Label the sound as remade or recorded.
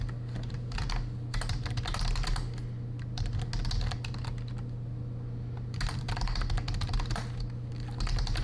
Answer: recorded